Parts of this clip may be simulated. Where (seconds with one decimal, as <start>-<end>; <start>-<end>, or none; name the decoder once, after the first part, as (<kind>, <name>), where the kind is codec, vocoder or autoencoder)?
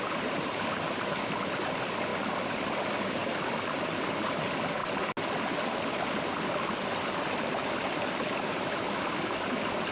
none